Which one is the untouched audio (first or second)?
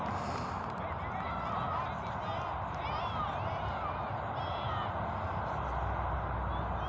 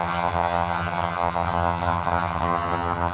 first